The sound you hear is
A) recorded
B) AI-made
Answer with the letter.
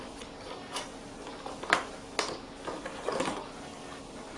A